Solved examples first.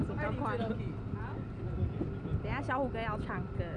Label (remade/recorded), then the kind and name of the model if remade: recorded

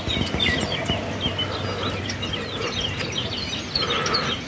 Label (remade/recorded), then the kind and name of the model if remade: recorded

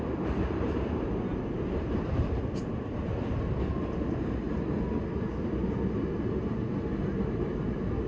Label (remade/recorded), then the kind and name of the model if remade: recorded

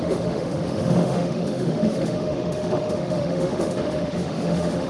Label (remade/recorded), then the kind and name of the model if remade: remade, autoencoder, DAC-VAE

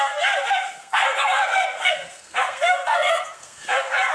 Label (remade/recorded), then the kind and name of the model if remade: remade, codec, SNAC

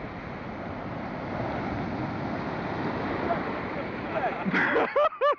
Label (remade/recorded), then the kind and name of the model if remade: recorded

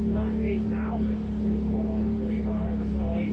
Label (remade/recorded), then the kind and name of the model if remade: remade, codec, DAC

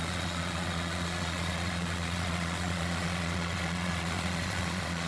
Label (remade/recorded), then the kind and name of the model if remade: remade, vocoder, Vocos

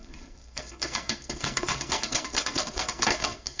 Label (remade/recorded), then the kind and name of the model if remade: remade, codec, SNAC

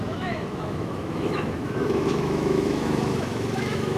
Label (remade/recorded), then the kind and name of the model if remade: remade, autoencoder, DAC-VAE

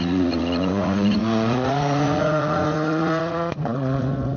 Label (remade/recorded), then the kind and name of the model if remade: remade, vocoder, Vocos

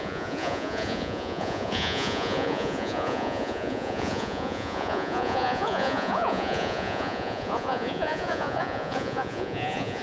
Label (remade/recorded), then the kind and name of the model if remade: remade, vocoder, Vocos